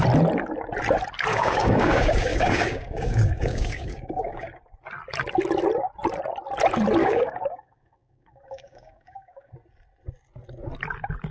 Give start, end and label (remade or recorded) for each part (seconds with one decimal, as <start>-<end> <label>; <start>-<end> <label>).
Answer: 0.0-1.3 recorded; 1.3-4.5 remade; 4.5-7.0 recorded; 7.0-9.5 remade; 9.5-11.3 recorded

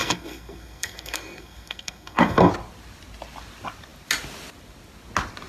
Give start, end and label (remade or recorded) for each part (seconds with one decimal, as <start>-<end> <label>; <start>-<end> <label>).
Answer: 0.0-2.5 remade; 2.5-5.5 recorded

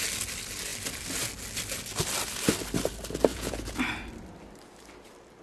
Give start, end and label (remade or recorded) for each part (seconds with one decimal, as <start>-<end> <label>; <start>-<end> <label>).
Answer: 0.0-3.3 recorded; 3.3-3.8 remade; 3.8-5.4 recorded

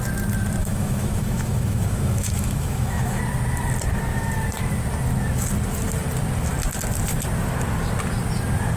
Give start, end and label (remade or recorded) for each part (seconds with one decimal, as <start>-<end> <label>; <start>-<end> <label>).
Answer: 0.0-0.6 recorded; 0.6-3.2 remade; 3.2-8.8 recorded

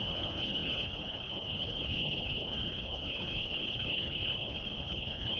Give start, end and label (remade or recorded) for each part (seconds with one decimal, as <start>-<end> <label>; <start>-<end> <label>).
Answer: 0.0-5.4 remade

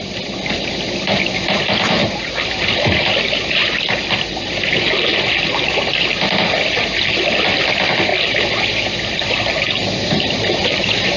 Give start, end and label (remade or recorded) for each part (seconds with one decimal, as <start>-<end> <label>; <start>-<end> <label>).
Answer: 0.0-2.0 remade; 2.0-3.0 recorded; 3.0-3.6 remade; 3.6-4.3 recorded; 4.3-5.1 remade; 5.1-7.7 recorded; 7.7-8.1 remade; 8.1-10.1 recorded; 10.1-11.2 remade

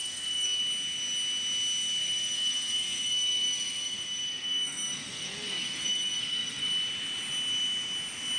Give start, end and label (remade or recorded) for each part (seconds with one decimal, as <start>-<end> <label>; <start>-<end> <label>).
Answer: 0.0-0.6 remade; 0.6-2.0 recorded; 2.0-6.7 remade; 6.7-8.4 recorded

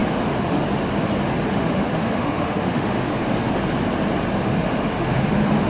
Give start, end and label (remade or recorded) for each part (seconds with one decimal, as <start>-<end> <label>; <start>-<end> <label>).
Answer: 0.0-0.6 remade; 0.6-1.5 recorded; 1.5-3.1 remade; 3.1-4.4 recorded; 4.4-5.7 remade